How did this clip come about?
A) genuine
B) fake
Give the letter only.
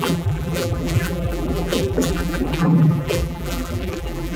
B